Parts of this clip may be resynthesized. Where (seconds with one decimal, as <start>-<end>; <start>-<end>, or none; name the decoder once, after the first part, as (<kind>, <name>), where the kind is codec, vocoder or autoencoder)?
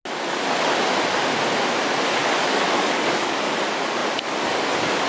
2.2-3.5 (codec, DAC)